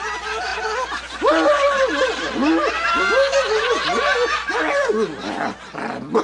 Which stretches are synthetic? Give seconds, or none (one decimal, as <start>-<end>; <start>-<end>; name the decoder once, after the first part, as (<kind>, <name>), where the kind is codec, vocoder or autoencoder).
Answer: none